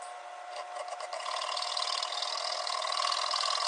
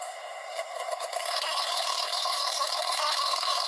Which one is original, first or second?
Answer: first